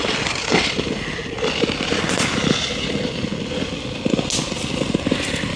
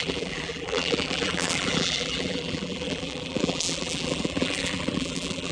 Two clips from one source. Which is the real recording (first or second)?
first